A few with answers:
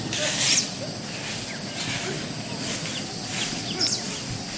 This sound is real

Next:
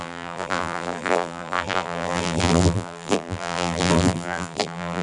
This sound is fake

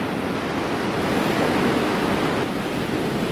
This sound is real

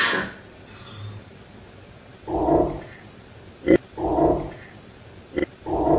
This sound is real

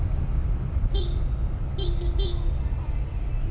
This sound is real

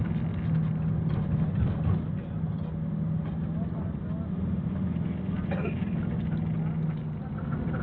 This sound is real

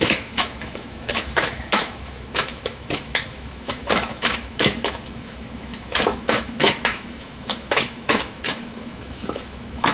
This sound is fake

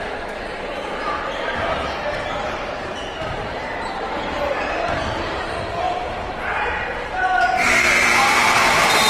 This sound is fake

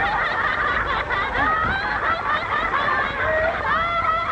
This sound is real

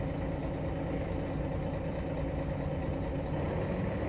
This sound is real